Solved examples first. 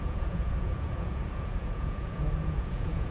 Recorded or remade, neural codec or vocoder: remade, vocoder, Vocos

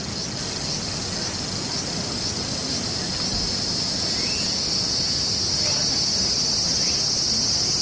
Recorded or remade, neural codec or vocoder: recorded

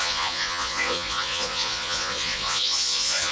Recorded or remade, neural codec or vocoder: remade, vocoder, Vocos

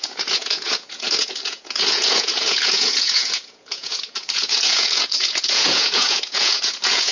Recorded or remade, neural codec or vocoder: remade, vocoder, Vocos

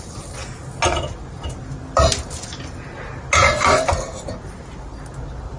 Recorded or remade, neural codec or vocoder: recorded